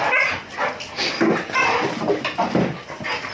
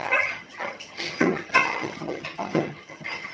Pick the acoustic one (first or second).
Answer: first